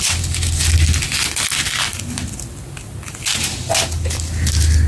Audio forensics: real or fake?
real